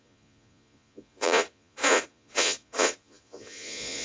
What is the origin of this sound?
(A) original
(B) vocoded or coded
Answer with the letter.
B